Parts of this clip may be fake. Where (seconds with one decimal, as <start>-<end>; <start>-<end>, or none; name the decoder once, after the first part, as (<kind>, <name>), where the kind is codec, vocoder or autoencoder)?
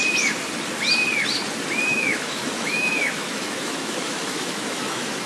1.9-5.3 (autoencoder, DAC-VAE)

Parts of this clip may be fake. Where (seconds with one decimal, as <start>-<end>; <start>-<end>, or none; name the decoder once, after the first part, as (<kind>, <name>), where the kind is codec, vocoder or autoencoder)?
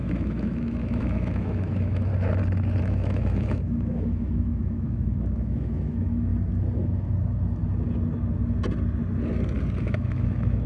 0.0-2.1 (autoencoder, DAC-VAE); 2.8-6.3; 9.8-10.7